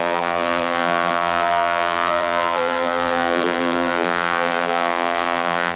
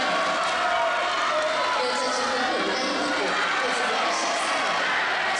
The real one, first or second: second